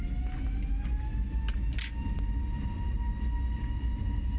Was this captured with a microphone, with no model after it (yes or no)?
yes